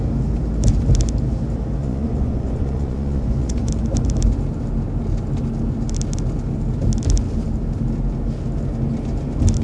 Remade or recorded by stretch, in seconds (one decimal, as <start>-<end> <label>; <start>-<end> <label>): 0.0-1.8 recorded; 1.8-3.7 remade; 3.7-9.6 recorded